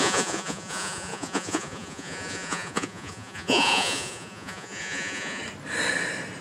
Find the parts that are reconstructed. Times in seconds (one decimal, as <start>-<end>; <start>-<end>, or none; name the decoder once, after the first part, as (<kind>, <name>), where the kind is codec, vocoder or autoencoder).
0.0-5.4 (vocoder, Vocos)